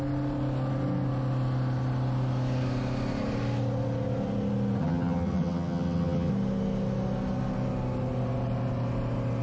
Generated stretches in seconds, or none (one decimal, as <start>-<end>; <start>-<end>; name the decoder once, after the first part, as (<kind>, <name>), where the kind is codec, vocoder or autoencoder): 4.8-6.3 (vocoder, HiFi-GAN)